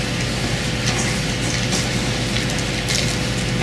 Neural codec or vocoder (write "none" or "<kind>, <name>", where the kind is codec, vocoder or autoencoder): none